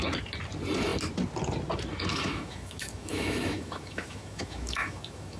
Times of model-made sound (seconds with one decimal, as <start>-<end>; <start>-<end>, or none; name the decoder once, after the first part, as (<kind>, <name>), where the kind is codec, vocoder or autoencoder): 2.1-5.4 (autoencoder, DAC-VAE)